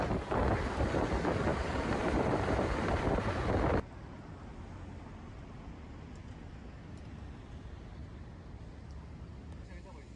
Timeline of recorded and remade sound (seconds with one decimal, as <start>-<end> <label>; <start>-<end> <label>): 0.0-1.5 recorded; 1.5-3.0 remade; 3.0-8.0 recorded; 8.0-8.6 remade; 8.6-10.2 recorded